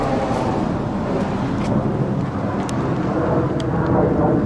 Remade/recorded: recorded